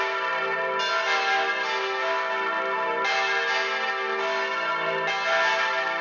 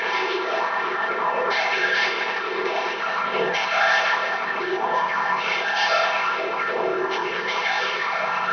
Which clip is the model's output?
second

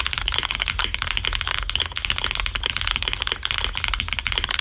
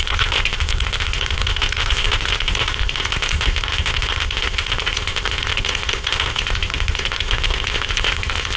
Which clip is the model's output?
second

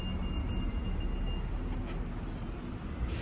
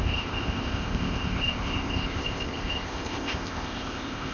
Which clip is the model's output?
second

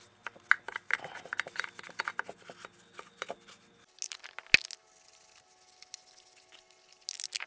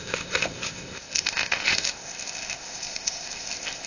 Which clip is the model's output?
second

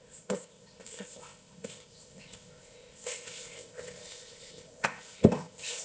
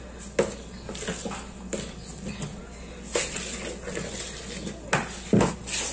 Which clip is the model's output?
first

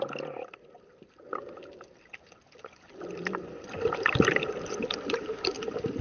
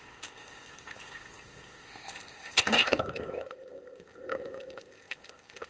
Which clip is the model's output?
second